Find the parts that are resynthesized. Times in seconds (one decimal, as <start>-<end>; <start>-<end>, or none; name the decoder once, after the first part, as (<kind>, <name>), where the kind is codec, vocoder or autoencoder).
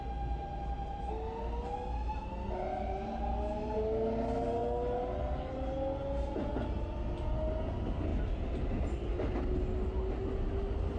none